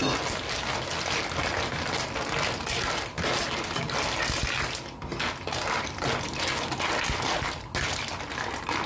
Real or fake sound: real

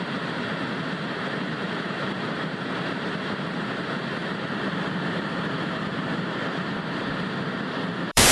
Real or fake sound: fake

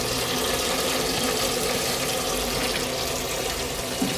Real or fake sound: fake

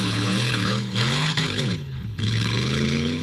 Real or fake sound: fake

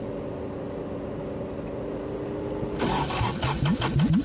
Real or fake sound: real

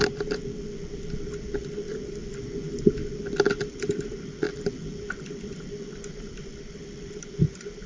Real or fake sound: real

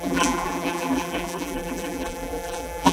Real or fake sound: fake